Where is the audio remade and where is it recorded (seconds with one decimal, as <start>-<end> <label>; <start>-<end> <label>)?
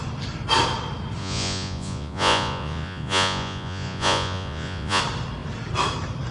0.0-1.2 recorded; 1.2-5.0 remade; 5.0-6.3 recorded